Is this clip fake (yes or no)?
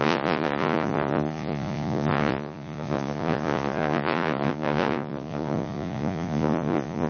yes